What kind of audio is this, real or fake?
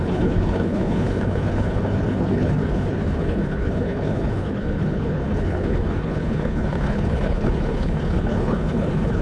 fake